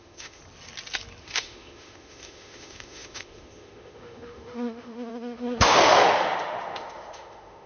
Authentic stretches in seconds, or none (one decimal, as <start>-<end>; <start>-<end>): 0.4-1.2